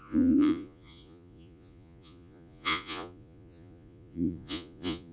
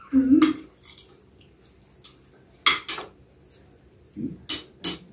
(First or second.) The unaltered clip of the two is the second